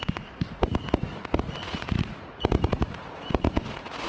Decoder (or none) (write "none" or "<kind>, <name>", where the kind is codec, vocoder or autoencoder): vocoder, Vocos